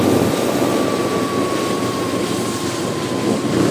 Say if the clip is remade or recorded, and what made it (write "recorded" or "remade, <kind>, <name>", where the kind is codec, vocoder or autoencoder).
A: recorded